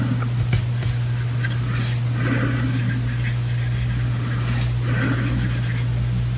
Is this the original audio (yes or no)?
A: yes